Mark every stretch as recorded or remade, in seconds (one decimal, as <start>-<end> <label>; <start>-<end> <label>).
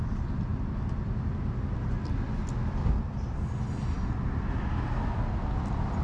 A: 0.0-6.0 recorded